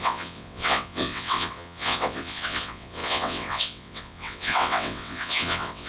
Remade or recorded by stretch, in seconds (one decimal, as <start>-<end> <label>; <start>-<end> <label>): 0.0-5.9 remade